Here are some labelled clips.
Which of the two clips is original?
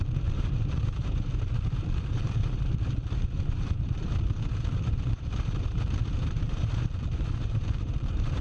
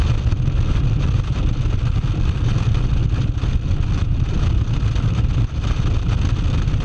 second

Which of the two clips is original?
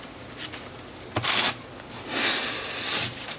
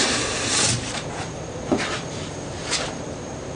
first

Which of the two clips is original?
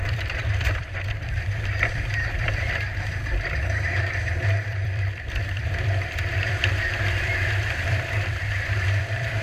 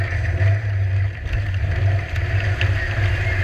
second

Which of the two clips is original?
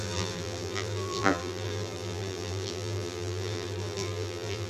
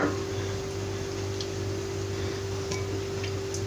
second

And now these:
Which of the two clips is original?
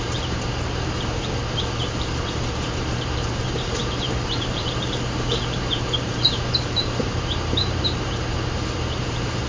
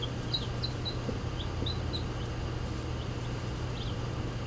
second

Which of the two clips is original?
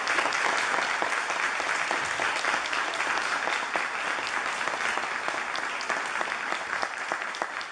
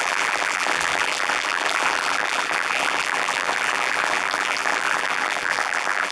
first